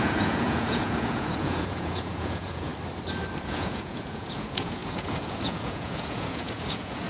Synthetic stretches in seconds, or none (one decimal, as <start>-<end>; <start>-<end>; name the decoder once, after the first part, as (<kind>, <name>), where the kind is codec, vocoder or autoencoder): 0.0-2.7 (vocoder, Vocos); 3.4-7.1